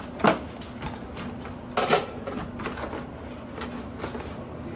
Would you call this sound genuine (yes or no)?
yes